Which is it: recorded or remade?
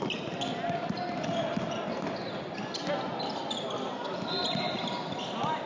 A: recorded